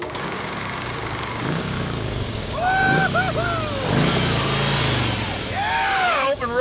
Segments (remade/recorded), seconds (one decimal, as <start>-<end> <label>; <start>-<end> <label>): 0.0-3.0 remade; 3.0-5.7 recorded; 5.7-6.6 remade